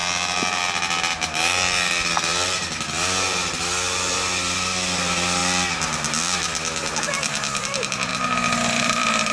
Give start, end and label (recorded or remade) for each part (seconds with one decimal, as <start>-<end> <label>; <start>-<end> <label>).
0.0-1.0 recorded; 1.0-5.4 remade; 5.4-7.0 recorded; 7.0-9.3 remade